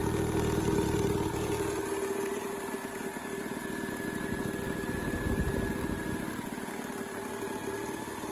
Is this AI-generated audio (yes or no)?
no